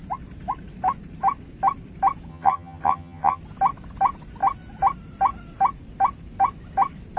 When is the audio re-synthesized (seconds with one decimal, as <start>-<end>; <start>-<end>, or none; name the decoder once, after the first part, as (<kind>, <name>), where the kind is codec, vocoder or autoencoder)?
2.3-3.4 (vocoder, HiFi-GAN)